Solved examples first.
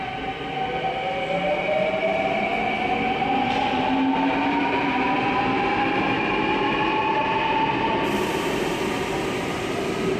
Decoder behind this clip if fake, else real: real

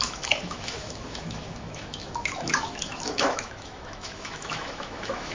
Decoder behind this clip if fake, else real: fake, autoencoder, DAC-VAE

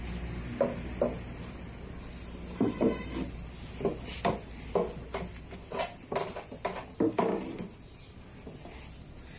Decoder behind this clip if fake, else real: real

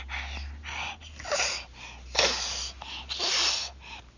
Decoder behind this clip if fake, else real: real